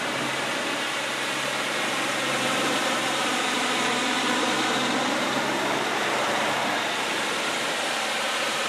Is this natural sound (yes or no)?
no